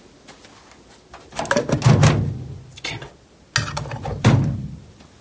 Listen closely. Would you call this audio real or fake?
real